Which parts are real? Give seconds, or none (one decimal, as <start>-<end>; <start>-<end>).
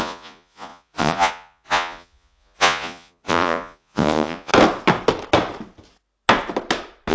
4.5-7.1